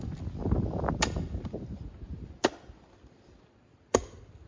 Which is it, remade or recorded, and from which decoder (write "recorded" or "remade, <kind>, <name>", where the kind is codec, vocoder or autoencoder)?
recorded